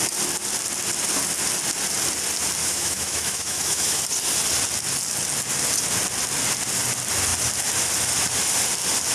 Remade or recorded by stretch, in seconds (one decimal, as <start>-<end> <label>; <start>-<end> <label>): 0.0-2.6 recorded; 2.6-4.0 remade; 4.0-9.1 recorded